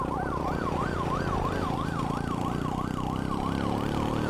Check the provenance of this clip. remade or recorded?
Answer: recorded